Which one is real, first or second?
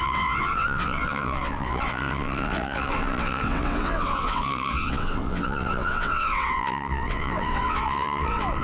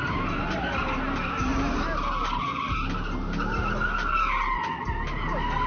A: second